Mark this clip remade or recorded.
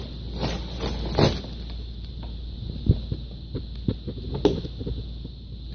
recorded